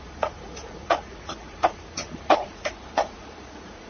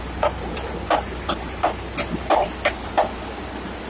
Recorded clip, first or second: second